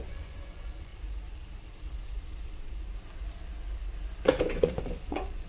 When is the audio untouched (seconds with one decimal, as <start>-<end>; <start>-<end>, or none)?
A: 0.9-4.2